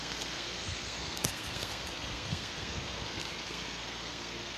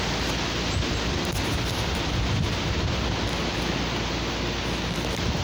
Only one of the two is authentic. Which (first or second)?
second